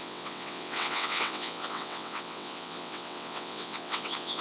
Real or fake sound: fake